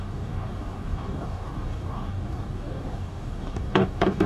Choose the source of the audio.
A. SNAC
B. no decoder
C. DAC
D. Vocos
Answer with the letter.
C